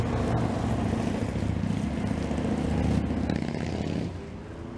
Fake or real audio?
real